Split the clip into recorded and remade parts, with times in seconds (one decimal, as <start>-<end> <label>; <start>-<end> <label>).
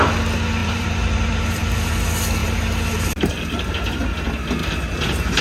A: 0.0-0.6 recorded; 0.6-1.9 remade; 1.9-2.4 recorded; 2.4-4.1 remade; 4.1-4.6 recorded; 4.6-5.4 remade